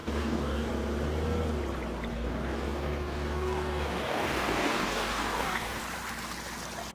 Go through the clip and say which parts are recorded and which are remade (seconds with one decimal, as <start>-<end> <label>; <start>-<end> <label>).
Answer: 0.0-0.7 remade; 0.7-2.1 recorded; 2.1-5.8 remade; 5.8-6.9 recorded